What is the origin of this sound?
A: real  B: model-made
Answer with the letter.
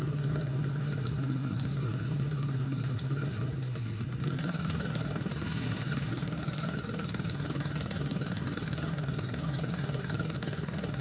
B